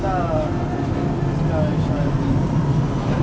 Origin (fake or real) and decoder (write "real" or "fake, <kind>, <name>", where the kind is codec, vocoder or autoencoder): real